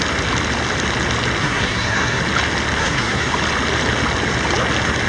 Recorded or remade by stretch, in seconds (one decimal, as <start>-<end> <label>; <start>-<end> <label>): 0.0-1.4 recorded; 1.4-2.2 remade; 2.2-2.8 recorded; 2.8-3.3 remade; 3.3-5.1 recorded